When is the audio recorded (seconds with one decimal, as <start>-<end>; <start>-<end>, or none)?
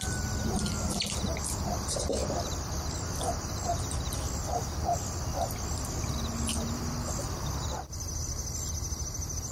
0.0-9.5